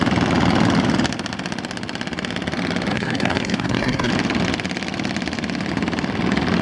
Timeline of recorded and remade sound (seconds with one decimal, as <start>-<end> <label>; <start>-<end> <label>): 0.0-2.9 recorded; 2.9-4.1 remade; 4.1-6.6 recorded